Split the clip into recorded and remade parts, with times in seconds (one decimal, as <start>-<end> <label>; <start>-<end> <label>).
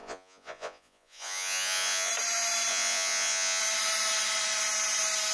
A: 0.0-2.1 remade; 2.1-2.7 recorded; 2.7-3.6 remade; 3.6-5.3 recorded